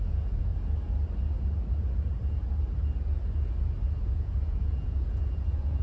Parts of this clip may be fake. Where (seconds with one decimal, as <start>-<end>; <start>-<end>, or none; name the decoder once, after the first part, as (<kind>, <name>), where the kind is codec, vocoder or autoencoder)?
0.0-0.5 (vocoder, Vocos); 4.0-5.8